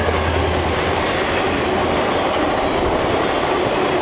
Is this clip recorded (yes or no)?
yes